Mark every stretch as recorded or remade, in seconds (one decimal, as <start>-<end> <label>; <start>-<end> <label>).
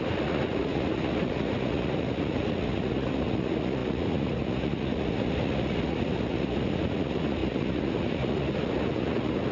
0.0-9.5 remade